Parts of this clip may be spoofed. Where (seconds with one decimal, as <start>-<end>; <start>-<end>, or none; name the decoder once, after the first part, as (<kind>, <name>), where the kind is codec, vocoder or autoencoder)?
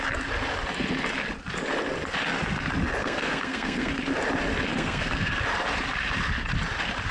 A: 3.0-3.9 (codec, SNAC); 4.7-5.4